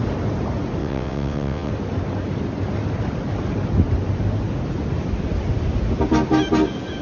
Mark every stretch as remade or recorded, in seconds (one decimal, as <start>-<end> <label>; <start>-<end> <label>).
0.0-0.8 recorded; 0.8-1.7 remade; 1.7-7.0 recorded